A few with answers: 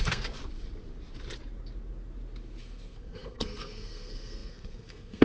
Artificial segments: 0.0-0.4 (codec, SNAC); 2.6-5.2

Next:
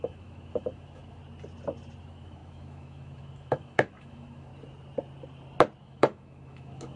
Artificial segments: 0.0-1.2 (autoencoder, DAC-VAE); 2.0-4.5; 5.8-7.0

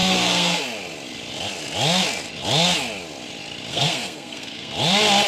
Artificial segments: 0.0-0.6 (codec, SNAC); 3.7-4.7

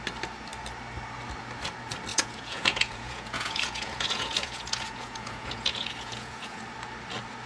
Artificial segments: 2.1-6.6 (vocoder, Vocos)

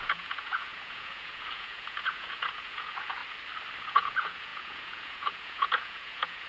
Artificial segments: 0.0-3.2 (vocoder, Vocos); 3.8-6.5

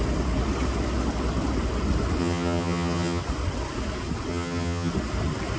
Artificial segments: 2.2-3.2 (vocoder, HiFi-GAN); 4.3-4.9